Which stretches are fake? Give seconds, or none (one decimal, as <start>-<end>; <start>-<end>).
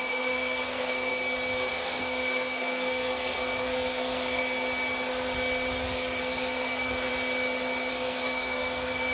0.0-1.1; 1.7-4.4; 6.2-7.1; 7.9-9.1